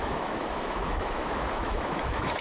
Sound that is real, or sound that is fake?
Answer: fake